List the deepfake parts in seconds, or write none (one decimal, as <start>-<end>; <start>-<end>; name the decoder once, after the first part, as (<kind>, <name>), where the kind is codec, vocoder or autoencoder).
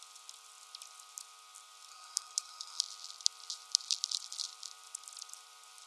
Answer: 1.9-2.8 (codec, SNAC)